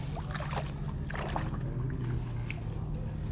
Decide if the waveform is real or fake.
real